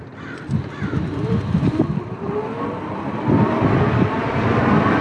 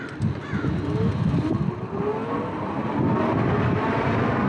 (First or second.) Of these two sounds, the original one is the second